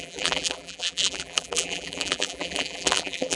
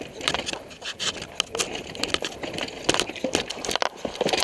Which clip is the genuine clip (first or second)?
second